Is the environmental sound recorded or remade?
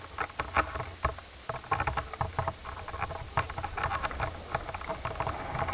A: recorded